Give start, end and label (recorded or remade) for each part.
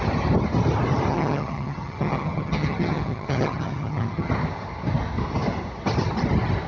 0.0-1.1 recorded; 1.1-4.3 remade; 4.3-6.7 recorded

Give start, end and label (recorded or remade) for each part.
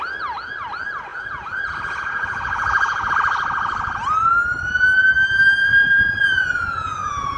0.0-1.1 recorded; 1.1-3.1 remade; 3.1-5.6 recorded; 5.6-7.4 remade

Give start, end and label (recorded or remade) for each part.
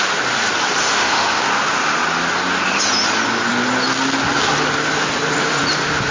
0.0-0.8 recorded; 0.8-1.4 remade; 1.4-6.1 recorded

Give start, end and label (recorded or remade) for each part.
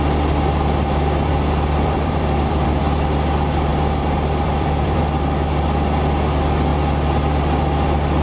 0.0-1.3 recorded; 1.3-2.8 remade; 2.8-3.7 recorded; 3.7-5.0 remade; 5.0-8.2 recorded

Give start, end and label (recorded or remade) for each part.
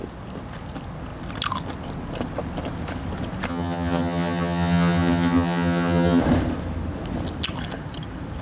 0.0-3.5 recorded; 3.5-6.2 remade; 6.2-8.4 recorded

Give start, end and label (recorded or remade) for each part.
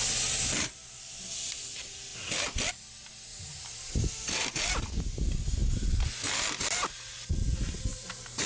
0.0-3.3 recorded; 3.3-4.6 remade; 4.6-7.9 recorded; 7.9-8.5 remade